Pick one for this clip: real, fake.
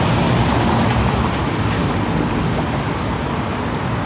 real